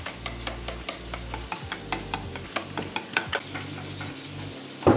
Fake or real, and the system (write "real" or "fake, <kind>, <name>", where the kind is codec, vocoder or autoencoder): real